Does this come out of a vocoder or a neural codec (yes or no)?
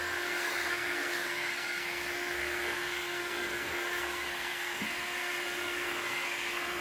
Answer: yes